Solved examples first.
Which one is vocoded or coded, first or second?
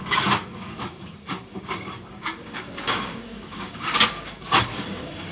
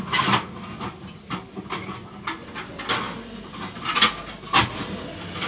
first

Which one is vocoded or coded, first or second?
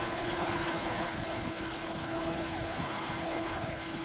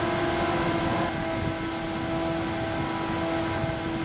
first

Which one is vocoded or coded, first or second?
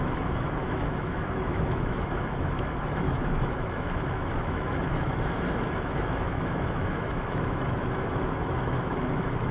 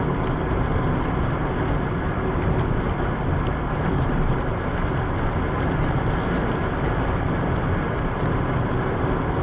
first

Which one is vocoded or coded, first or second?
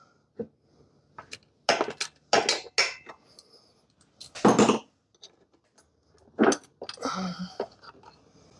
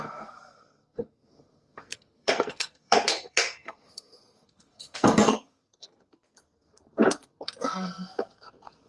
second